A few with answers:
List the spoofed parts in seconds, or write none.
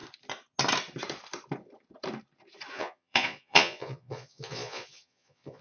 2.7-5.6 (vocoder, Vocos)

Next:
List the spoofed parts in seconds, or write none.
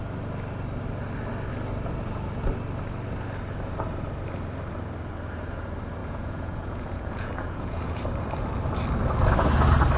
6.0-8.0 (vocoder, Vocos)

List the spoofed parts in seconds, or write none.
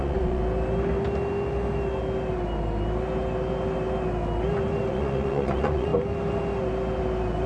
0.0-0.4 (vocoder, Vocos); 4.9-5.9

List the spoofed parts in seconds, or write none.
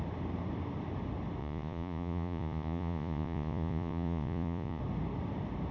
1.4-4.8 (vocoder, Vocos)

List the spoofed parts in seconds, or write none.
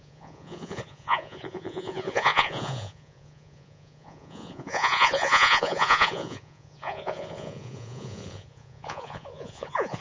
0.0-10.0 (vocoder, Vocos)